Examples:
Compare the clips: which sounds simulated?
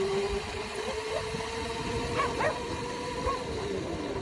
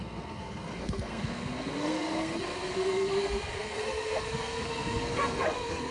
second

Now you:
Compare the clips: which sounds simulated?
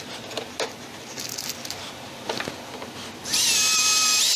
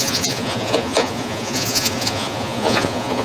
second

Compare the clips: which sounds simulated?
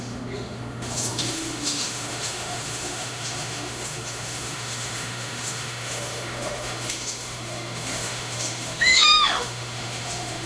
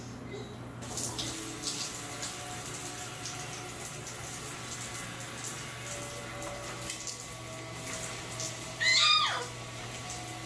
first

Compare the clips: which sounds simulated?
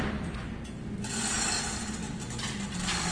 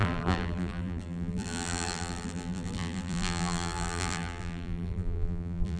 second